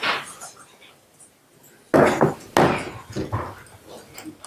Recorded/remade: recorded